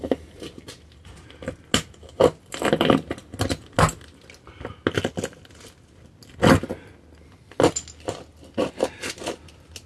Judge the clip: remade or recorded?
recorded